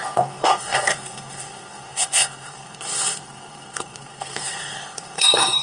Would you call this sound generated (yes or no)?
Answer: yes